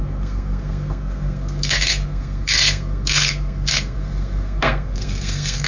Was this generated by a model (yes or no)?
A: yes